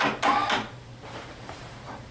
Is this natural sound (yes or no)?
no